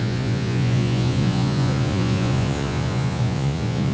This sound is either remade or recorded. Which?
remade